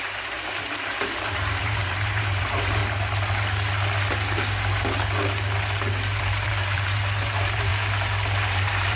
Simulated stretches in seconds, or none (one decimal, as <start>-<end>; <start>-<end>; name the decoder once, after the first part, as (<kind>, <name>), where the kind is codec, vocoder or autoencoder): 0.0-2.8 (vocoder, BigVGAN v2); 6.2-7.7; 8.5-9.0